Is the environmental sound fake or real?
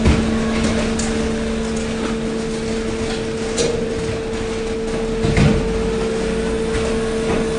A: real